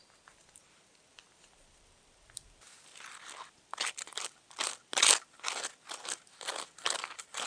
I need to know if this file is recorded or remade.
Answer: recorded